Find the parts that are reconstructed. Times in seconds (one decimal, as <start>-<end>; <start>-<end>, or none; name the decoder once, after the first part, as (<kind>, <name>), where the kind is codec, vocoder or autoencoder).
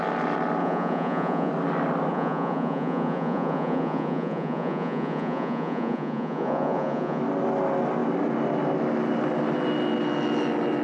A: 0.6-1.5 (vocoder, Vocos); 2.1-7.2